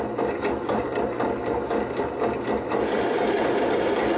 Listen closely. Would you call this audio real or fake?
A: real